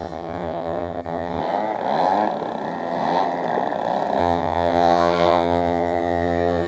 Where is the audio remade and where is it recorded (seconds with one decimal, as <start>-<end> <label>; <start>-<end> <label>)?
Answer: 0.0-1.4 remade; 1.4-4.2 recorded; 4.2-6.7 remade